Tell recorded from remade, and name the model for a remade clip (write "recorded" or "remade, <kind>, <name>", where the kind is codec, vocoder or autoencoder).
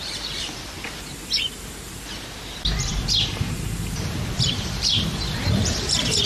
remade, vocoder, BigVGAN v2